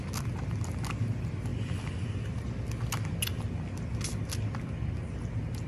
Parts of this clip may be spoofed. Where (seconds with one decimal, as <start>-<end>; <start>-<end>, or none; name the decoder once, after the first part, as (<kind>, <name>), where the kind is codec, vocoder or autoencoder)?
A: none